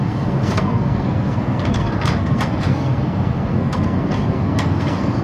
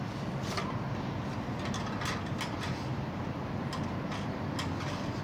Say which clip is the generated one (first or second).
first